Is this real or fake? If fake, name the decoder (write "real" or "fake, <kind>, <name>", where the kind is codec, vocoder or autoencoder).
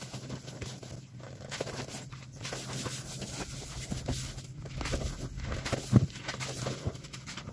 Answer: real